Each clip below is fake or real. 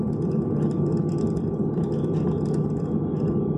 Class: real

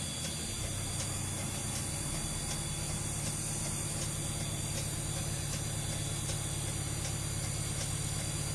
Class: real